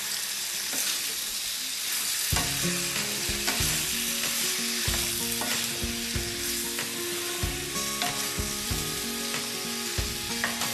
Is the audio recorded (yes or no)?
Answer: yes